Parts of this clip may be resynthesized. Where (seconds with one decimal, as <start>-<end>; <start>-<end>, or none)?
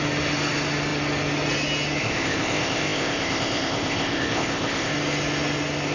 2.0-4.9